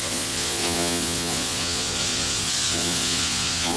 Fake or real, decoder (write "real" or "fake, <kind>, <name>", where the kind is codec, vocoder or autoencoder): fake, vocoder, Vocos